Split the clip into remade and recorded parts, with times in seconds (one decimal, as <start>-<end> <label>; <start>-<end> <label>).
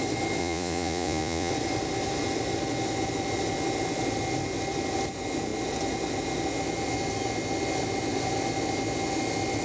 0.0-0.4 recorded; 0.4-1.5 remade; 1.5-9.6 recorded